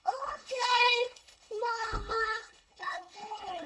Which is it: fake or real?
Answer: fake